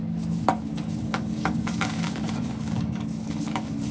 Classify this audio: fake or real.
fake